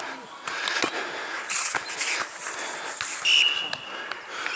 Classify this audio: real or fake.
real